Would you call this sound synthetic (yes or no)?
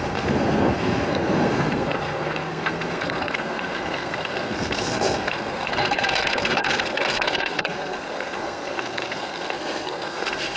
yes